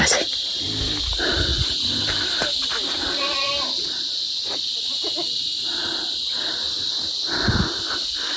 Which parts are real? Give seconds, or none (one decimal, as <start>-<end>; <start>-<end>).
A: 0.0-1.5; 2.0-8.4